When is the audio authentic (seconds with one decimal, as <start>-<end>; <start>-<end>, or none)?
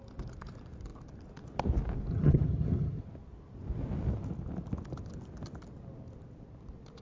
0.0-2.1; 3.0-7.0